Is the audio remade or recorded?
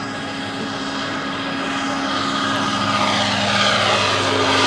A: recorded